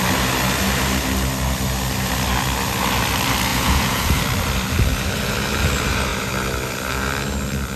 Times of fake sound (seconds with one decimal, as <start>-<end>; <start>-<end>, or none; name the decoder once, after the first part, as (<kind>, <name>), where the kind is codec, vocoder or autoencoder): 3.5-4.2 (vocoder, Vocos)